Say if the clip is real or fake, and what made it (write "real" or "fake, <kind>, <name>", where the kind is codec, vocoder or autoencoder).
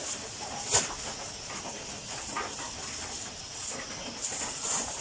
real